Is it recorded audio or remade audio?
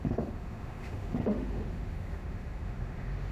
remade